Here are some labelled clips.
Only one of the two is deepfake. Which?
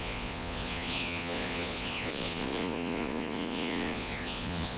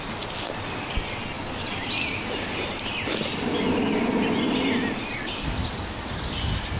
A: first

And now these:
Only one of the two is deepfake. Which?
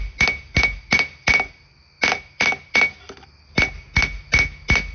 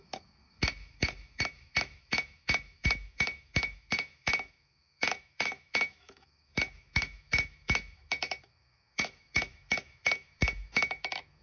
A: second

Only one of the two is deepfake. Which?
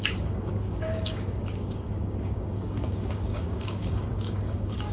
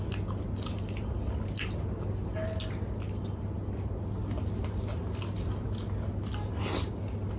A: first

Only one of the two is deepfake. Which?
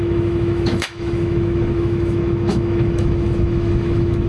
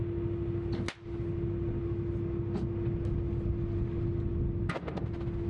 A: first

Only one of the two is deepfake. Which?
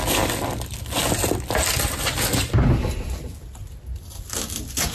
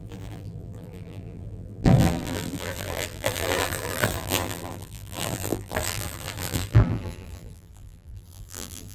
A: second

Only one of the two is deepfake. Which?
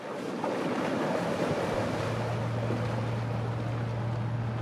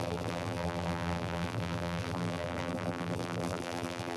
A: second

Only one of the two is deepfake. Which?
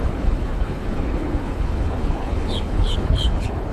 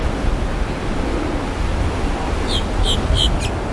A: first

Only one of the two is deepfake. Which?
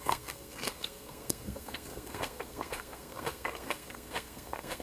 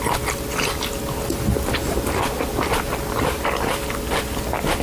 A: first